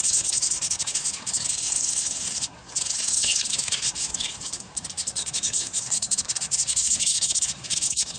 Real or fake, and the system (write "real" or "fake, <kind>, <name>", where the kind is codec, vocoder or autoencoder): fake, codec, SNAC